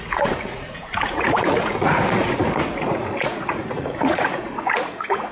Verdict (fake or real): fake